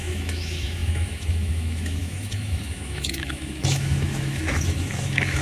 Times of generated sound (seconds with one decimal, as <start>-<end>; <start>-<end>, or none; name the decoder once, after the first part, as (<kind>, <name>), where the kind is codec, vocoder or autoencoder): 0.0-5.4 (autoencoder, DAC-VAE)